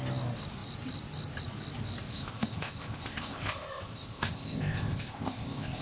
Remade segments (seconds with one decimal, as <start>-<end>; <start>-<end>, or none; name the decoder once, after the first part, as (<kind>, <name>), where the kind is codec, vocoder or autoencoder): 2.1-5.8 (codec, ZipCodec)